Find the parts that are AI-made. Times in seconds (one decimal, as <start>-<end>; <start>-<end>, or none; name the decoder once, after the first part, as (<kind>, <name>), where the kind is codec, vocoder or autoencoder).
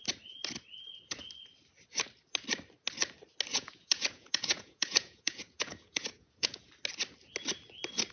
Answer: 3.5-6.7 (vocoder, Vocos)